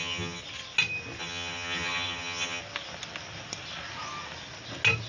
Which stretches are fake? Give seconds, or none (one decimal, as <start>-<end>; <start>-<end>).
0.0-0.4; 1.2-2.6